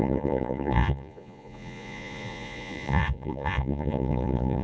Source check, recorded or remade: remade